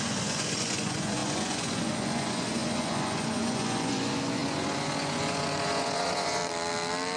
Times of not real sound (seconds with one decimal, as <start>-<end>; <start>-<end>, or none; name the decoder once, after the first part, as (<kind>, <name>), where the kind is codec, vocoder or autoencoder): 0.0-6.4 (vocoder, Vocos)